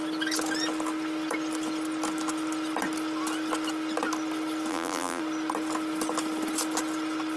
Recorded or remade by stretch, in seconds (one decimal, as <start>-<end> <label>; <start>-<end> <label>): 0.0-4.7 recorded; 4.7-5.2 remade; 5.2-7.4 recorded